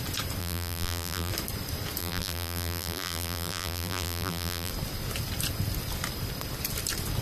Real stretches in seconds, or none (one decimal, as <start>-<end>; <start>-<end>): 0.0-0.4; 1.3-2.0; 4.7-7.2